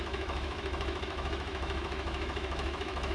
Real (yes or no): no